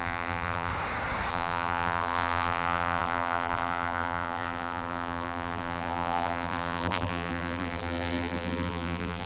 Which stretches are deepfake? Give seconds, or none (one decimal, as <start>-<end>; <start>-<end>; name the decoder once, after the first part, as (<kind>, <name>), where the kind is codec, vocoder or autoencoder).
0.0-0.7 (vocoder, BigVGAN v2); 1.3-9.3